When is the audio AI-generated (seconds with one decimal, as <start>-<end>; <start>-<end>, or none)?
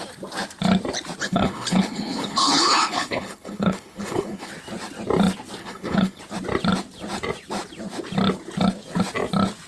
1.2-4.5; 5.6-6.2